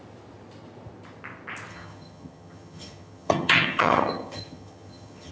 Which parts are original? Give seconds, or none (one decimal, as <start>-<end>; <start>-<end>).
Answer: 0.0-1.7